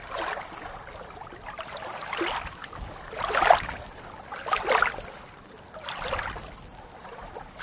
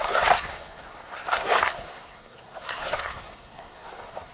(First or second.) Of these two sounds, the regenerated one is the second